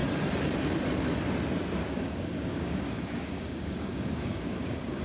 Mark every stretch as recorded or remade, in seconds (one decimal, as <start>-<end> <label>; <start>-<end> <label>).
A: 0.0-1.8 recorded; 1.8-5.0 remade

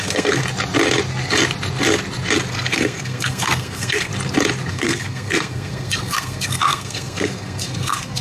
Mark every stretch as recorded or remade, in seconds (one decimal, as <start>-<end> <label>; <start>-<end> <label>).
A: 0.0-0.4 remade; 0.4-2.5 recorded; 2.5-4.1 remade; 4.1-4.7 recorded; 4.7-8.2 remade